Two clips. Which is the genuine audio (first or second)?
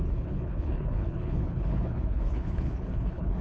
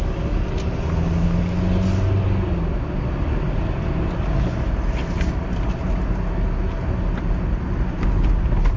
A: second